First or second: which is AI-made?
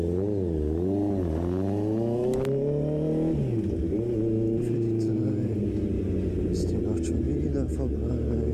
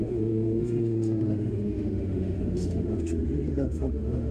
second